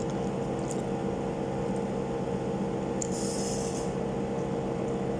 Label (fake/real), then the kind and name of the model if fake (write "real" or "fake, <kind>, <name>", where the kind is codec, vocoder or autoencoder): real